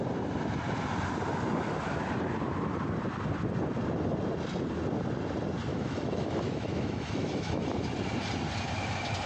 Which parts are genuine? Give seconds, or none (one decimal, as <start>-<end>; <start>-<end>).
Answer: 0.0-5.7; 7.6-9.3